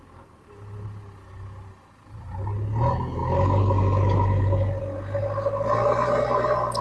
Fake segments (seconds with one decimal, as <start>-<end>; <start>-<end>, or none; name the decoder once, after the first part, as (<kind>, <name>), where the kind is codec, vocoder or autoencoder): none